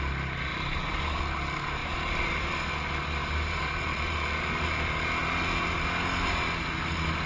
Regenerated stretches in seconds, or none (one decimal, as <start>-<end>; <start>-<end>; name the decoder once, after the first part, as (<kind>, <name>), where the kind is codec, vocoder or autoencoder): 0.5-1.2 (vocoder, BigVGAN v2); 1.8-2.7; 3.2-4.2